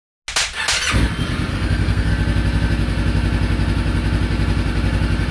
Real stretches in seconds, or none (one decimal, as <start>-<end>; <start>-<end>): 0.0-1.5; 2.1-5.3